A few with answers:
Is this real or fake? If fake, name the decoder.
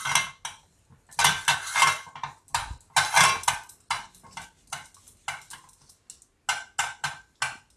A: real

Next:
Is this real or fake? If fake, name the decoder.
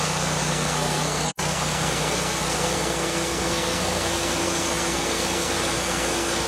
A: fake, codec, SNAC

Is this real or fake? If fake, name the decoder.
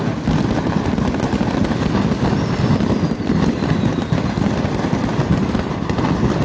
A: real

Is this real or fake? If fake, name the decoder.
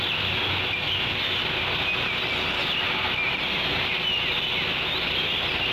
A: real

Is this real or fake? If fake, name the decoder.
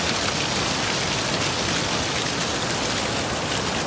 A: real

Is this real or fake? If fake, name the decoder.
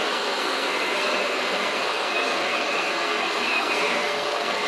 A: fake, codec, SNAC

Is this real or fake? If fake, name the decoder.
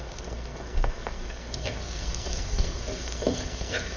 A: fake, codec, SNAC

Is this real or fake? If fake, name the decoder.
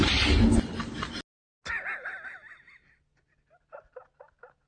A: real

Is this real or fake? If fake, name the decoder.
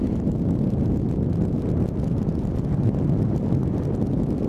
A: real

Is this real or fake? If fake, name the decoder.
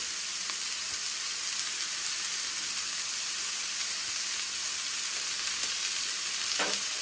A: real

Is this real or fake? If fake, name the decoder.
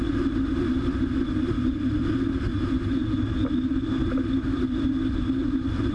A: real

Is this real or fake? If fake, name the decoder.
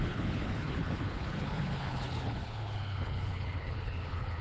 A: fake, codec, HILCodec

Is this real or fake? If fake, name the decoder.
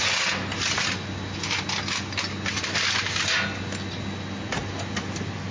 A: real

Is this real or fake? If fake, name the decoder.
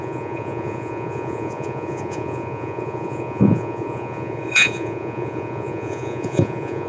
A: fake, vocoder, Vocos